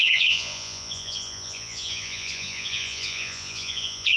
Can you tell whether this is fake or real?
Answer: fake